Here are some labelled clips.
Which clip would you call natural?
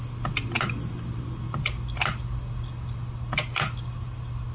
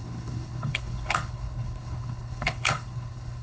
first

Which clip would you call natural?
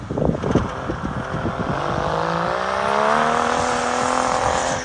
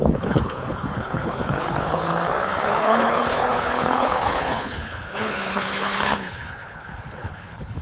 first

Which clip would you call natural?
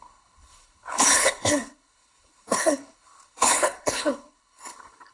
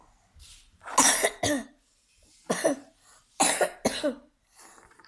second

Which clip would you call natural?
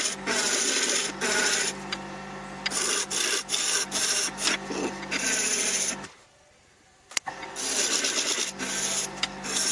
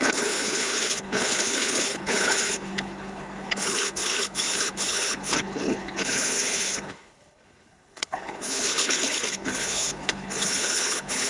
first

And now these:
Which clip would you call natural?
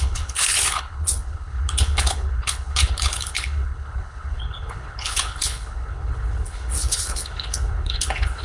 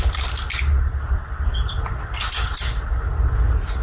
second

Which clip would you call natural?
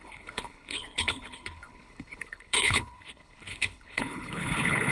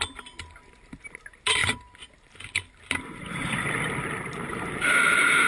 second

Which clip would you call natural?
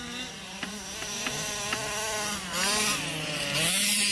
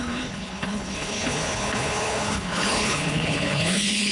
first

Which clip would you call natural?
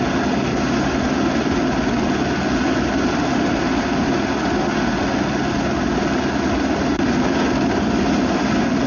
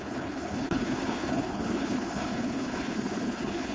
first